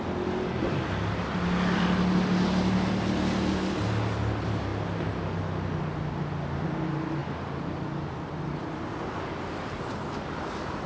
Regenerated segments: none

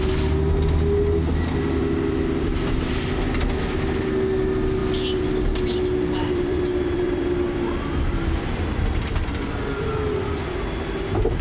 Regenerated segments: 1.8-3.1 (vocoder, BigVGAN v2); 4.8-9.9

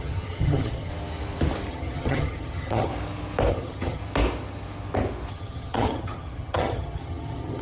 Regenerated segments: 0.0-0.9 (vocoder, HiFi-GAN); 1.7-2.9; 3.5-4.0; 5.3-7.6